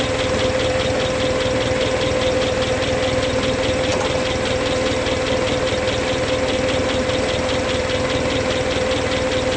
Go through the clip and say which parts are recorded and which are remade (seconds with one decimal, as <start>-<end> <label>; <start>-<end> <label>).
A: 0.0-9.6 recorded